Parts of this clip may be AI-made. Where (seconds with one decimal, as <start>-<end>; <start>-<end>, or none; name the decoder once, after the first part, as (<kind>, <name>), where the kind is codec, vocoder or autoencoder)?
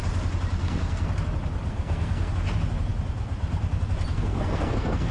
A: 0.6-1.1 (codec, SNAC); 1.7-2.3; 4.1-5.1